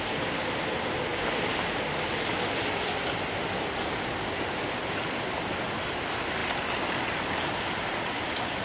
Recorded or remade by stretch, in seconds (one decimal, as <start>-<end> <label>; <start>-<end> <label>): 0.0-8.6 recorded